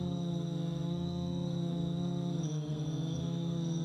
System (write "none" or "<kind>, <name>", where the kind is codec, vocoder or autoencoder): codec, SNAC